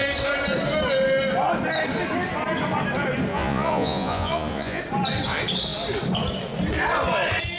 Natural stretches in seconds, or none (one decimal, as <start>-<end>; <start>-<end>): 0.0-3.3; 4.8-7.6

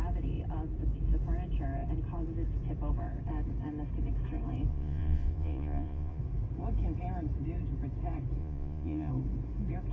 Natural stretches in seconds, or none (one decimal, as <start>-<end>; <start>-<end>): 0.0-4.7; 6.2-8.4; 9.1-9.9